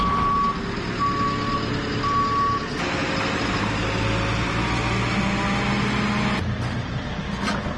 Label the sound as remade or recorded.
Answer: recorded